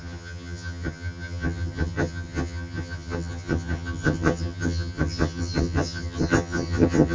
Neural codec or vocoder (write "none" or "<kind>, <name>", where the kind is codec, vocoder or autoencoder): vocoder, HiFi-GAN